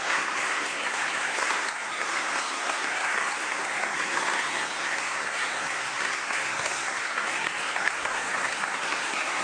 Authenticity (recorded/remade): remade